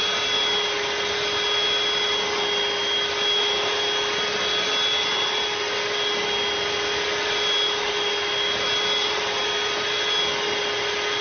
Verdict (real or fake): real